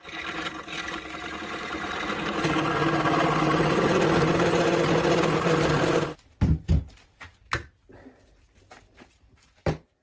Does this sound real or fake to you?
real